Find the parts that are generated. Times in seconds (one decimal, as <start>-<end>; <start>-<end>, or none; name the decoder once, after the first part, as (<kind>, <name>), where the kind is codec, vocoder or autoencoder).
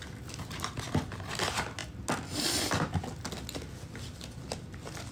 none